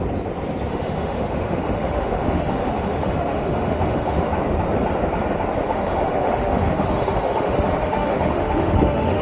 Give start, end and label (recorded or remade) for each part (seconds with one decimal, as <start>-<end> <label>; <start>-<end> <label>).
0.0-0.7 recorded; 0.7-4.3 remade; 4.3-5.6 recorded; 5.6-9.2 remade